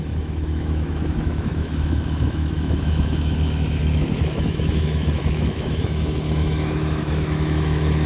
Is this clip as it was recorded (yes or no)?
no